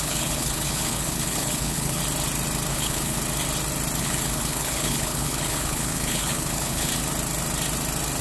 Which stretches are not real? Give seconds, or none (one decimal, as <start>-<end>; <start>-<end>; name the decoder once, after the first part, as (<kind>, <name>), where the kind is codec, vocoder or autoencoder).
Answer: 0.0-2.0 (codec, HILCodec); 2.7-3.2; 4.0-6.9